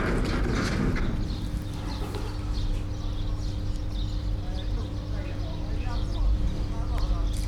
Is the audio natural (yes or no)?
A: yes